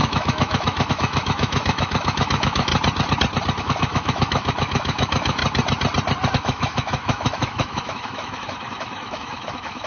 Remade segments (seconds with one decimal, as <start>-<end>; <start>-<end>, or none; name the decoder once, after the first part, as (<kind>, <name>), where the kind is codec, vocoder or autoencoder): 0.0-2.7 (autoencoder, DAC-VAE); 3.6-5.4; 6.3-9.9